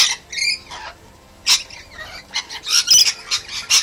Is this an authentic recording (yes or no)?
yes